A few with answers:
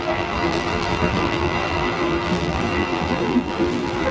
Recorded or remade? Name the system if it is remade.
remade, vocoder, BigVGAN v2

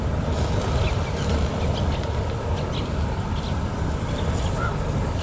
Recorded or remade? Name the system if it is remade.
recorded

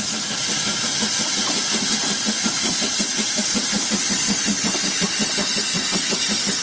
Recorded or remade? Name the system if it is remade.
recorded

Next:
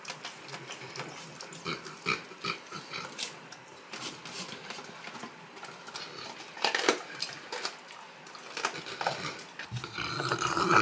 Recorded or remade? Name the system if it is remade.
recorded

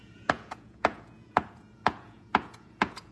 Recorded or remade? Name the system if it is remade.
remade, vocoder, Vocos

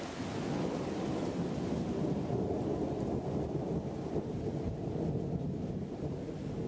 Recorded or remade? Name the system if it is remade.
recorded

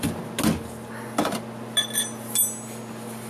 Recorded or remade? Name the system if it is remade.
recorded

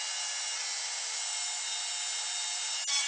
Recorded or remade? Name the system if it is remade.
recorded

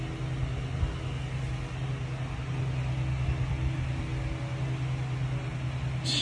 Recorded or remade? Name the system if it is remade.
recorded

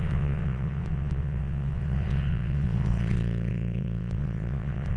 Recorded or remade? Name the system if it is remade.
remade, vocoder, WaveNeXt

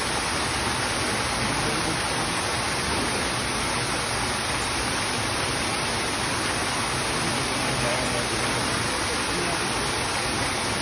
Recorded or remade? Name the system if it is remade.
recorded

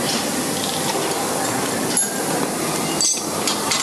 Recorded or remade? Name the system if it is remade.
recorded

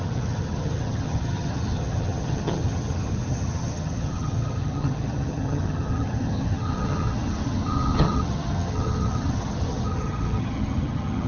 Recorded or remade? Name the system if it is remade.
remade, vocoder, HiFi-GAN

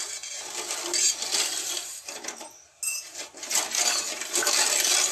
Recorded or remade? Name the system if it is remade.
recorded